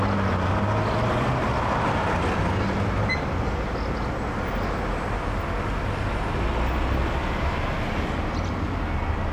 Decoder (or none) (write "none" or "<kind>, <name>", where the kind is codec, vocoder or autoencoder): none